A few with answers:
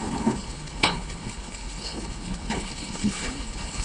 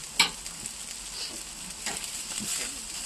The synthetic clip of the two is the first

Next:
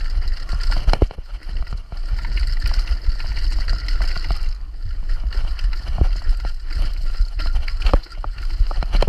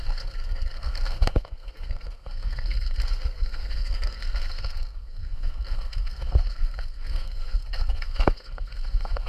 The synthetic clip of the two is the second